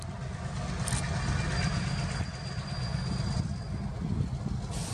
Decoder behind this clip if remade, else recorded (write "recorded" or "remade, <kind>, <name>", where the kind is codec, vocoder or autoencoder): recorded